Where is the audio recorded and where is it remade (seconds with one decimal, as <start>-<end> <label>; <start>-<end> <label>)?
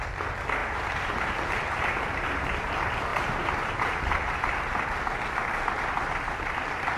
0.0-0.6 recorded; 0.6-2.7 remade; 2.7-3.1 recorded; 3.1-4.0 remade; 4.0-7.0 recorded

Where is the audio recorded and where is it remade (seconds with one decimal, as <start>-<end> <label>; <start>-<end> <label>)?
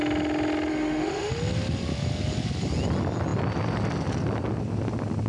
0.0-0.7 recorded; 0.7-1.3 remade; 1.3-5.3 recorded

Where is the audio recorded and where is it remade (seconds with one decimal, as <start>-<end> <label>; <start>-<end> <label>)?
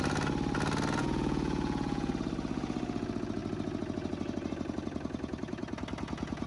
0.0-1.0 recorded; 1.0-2.1 remade; 2.1-6.5 recorded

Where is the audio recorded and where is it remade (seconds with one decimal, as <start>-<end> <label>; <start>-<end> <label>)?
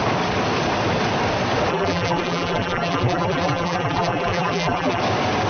0.0-1.7 recorded; 1.7-5.0 remade; 5.0-5.5 recorded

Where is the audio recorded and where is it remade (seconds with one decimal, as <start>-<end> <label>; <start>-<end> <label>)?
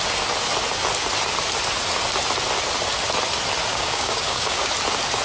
0.0-3.7 recorded; 3.7-4.7 remade; 4.7-5.2 recorded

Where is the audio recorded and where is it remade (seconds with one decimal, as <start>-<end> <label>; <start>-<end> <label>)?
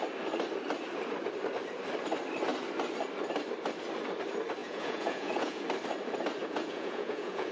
0.0-4.6 recorded; 4.6-5.6 remade; 5.6-6.4 recorded; 6.4-7.5 remade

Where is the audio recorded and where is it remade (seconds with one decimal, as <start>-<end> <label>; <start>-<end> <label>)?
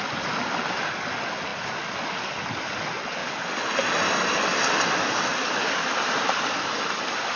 0.0-5.6 recorded; 5.6-6.2 remade; 6.2-7.4 recorded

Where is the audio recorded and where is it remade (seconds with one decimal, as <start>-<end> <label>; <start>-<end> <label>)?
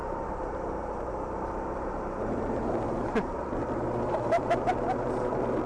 0.0-3.4 remade; 3.4-4.1 recorded; 4.1-5.3 remade; 5.3-5.7 recorded